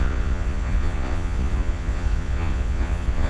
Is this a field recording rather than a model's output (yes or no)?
no